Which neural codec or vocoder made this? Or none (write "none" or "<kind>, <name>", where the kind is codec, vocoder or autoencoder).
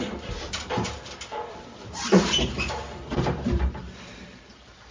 vocoder, BigVGAN v2